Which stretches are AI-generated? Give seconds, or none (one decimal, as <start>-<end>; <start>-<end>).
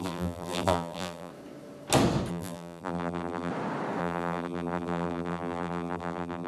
0.0-1.3; 2.3-3.5; 4.0-6.5